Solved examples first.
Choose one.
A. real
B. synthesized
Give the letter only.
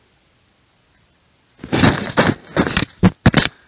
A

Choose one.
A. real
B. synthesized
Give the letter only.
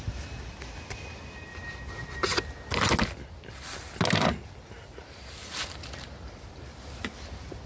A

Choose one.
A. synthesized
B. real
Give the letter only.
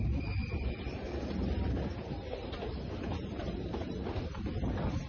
A